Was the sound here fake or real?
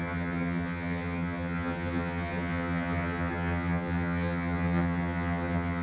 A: fake